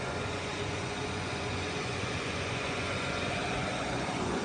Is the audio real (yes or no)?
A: no